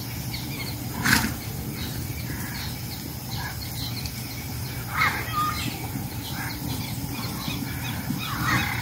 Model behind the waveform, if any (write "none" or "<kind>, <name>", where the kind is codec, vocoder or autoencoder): none